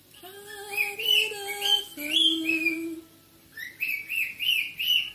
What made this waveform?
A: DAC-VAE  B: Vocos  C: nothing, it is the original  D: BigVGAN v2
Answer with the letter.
C